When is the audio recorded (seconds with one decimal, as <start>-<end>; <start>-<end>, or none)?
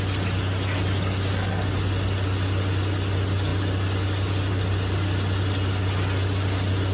0.0-6.9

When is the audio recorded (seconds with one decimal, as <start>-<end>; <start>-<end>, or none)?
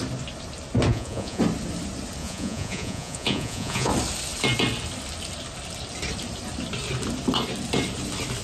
0.0-0.9; 1.4-2.2; 3.9-8.4